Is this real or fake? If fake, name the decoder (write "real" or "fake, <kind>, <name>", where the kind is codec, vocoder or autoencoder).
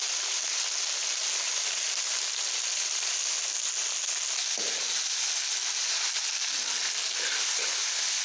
real